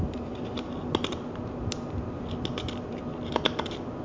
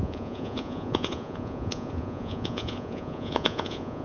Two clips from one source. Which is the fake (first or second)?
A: second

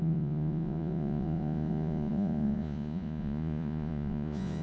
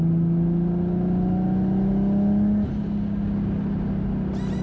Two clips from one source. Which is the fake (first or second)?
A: first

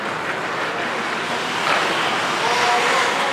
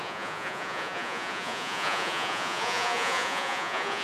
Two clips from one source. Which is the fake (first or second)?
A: second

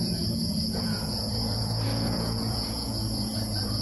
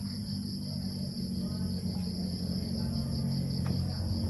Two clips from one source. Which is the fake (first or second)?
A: first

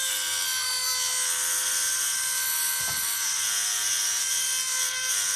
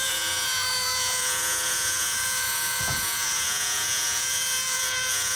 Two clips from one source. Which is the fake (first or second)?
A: second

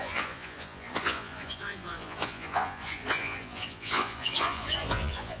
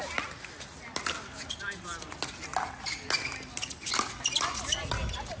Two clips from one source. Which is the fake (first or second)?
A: first